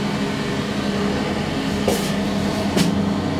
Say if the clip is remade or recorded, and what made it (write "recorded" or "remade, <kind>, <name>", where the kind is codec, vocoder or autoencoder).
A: recorded